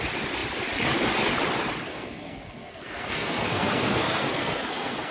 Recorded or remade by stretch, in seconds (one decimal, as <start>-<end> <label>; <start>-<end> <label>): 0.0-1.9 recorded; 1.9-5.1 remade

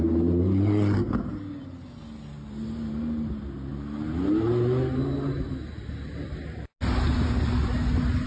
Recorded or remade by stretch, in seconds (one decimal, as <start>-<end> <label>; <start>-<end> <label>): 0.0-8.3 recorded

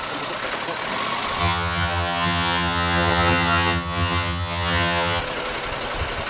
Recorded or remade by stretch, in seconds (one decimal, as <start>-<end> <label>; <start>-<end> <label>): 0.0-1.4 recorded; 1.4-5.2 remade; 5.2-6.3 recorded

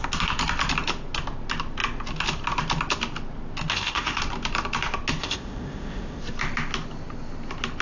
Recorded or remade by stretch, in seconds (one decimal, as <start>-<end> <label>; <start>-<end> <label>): 0.0-3.7 recorded; 3.7-4.2 remade; 4.2-5.2 recorded; 5.2-6.2 remade; 6.2-7.8 recorded

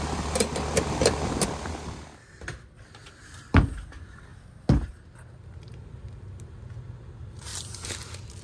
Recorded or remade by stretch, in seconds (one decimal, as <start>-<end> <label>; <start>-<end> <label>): 0.0-8.4 recorded

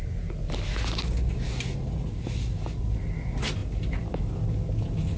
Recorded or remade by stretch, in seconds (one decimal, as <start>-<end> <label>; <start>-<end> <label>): 0.0-5.2 recorded

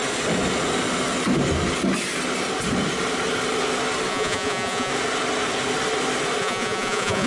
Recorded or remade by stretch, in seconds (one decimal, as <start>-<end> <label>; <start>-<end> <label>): 0.0-4.1 recorded; 4.1-4.9 remade; 4.9-6.4 recorded; 6.4-7.3 remade